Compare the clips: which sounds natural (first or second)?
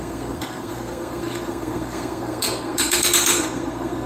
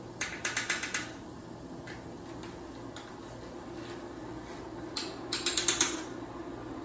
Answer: second